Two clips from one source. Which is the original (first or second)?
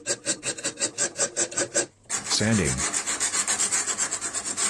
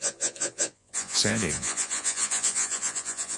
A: first